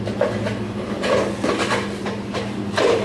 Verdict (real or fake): real